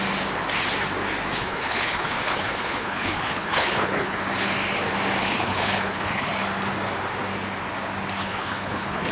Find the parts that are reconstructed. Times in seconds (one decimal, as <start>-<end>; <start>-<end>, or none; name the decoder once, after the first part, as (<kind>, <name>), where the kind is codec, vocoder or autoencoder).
1.4-4.2 (codec, HILCodec); 5.2-6.3; 8.2-9.1